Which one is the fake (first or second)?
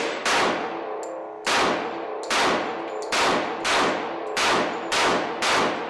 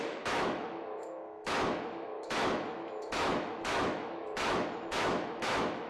second